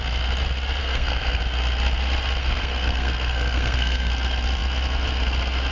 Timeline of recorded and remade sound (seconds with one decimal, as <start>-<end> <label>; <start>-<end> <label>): 0.0-0.8 recorded; 0.8-1.4 remade; 1.4-2.4 recorded; 2.4-4.1 remade; 4.1-5.7 recorded